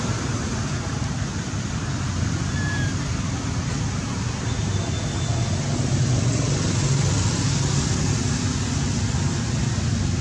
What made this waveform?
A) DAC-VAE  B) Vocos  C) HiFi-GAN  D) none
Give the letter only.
D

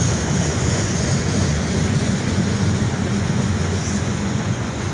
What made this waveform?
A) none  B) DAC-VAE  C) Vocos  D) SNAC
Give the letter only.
C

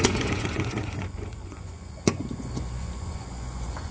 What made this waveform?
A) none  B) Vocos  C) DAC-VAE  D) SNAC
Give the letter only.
B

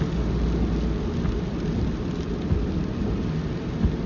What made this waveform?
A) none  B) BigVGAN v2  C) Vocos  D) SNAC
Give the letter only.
A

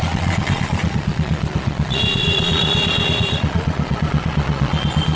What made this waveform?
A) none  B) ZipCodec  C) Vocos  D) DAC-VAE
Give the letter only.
C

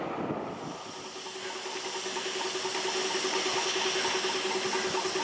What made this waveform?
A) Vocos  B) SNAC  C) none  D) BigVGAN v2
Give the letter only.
C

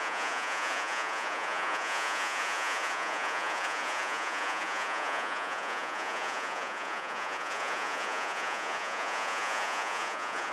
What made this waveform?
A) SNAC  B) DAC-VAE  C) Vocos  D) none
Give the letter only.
C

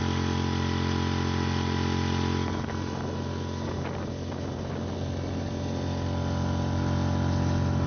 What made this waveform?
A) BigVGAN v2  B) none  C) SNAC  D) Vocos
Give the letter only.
B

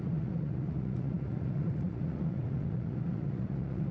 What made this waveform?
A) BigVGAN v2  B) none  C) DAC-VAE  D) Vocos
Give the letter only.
D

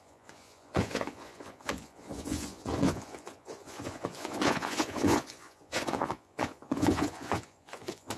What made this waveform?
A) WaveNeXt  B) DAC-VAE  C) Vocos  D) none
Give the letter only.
C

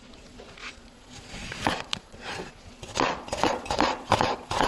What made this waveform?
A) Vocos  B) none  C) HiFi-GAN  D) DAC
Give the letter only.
A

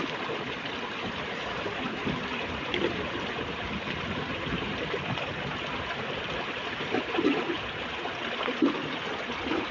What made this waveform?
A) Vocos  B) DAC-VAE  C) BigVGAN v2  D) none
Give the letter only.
D